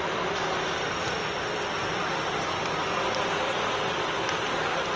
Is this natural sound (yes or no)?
yes